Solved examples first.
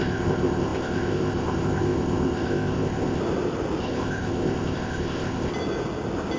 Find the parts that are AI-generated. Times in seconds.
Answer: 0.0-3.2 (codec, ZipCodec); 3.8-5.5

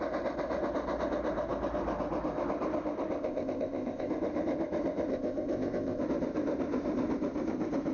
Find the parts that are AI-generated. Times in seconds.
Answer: 3.2-4.1 (codec, ZipCodec); 5.1-6.0

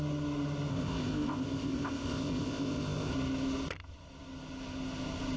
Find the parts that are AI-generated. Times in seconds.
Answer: 0.7-3.1 (codec, ZipCodec)

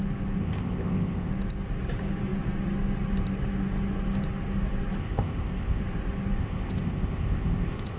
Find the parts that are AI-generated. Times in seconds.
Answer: 0.4-1.3 (codec, ZipCodec); 5.0-5.8; 6.4-8.0